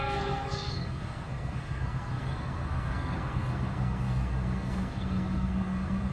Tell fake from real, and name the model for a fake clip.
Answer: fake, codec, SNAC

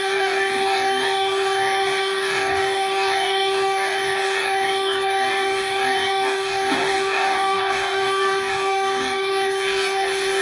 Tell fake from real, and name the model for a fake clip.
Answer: fake, codec, DAC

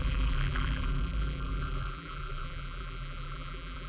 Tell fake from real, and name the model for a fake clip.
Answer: fake, vocoder, BigVGAN v2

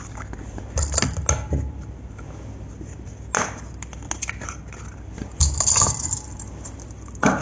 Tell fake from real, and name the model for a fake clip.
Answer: real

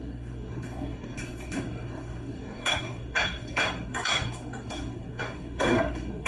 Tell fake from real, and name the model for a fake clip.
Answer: fake, codec, SNAC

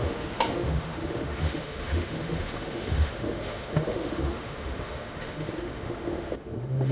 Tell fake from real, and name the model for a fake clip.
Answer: fake, autoencoder, DAC-VAE